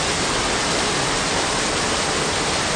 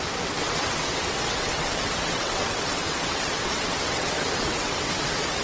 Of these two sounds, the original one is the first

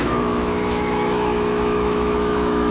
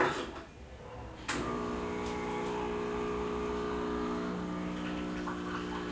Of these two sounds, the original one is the second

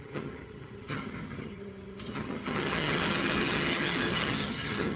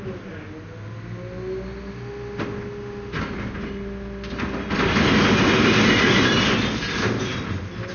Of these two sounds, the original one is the second